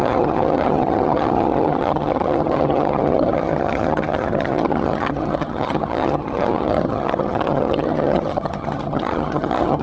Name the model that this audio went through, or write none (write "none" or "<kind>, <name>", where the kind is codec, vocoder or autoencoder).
vocoder, HiFi-GAN